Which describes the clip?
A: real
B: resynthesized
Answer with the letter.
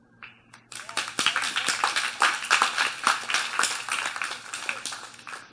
A